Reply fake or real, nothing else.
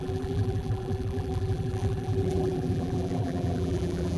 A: fake